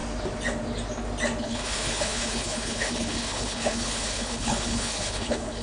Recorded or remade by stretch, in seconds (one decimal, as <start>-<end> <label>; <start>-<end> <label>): 0.0-1.4 recorded; 1.4-5.6 remade